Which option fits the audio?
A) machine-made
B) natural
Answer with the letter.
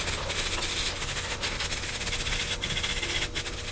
B